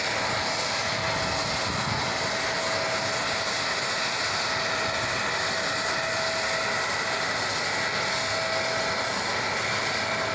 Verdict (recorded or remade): recorded